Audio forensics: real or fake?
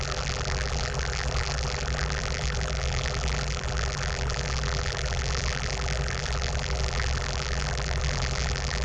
fake